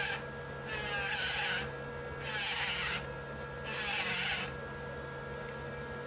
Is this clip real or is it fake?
real